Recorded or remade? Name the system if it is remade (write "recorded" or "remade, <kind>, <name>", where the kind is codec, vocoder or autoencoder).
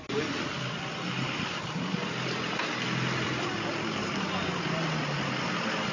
recorded